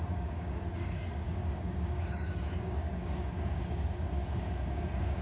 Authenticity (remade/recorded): remade